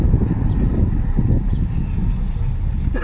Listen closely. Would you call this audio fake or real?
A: real